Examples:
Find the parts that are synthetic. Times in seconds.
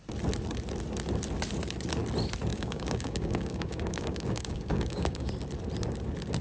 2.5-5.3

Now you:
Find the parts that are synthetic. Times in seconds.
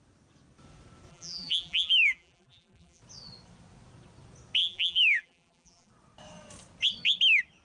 1.1-3.0; 4.6-5.9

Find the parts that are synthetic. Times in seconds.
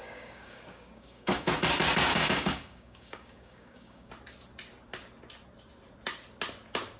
0.0-1.5; 2.1-4.1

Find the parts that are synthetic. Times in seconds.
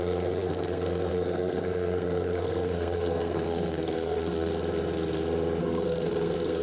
0.0-4.5; 5.6-6.6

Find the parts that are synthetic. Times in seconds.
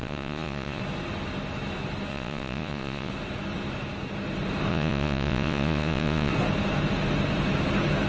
0.0-0.8; 2.1-3.1; 4.7-6.3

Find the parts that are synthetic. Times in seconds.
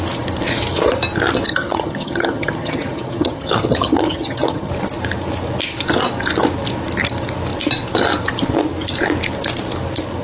1.5-4.7